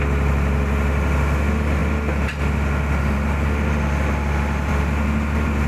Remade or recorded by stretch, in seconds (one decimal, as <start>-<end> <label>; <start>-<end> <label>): 0.0-5.7 recorded